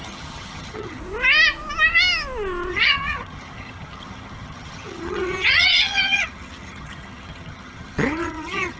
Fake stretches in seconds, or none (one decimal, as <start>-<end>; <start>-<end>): 0.0-1.0; 2.7-8.8